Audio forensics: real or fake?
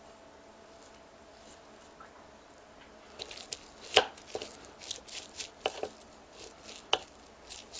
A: real